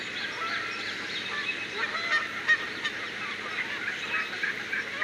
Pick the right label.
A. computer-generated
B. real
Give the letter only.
B